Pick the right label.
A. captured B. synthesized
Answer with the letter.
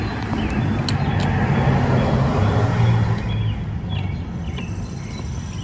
A